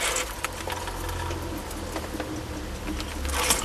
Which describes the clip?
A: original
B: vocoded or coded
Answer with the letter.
A